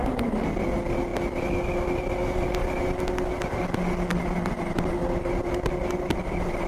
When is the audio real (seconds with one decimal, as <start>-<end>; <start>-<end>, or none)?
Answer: 0.0-6.7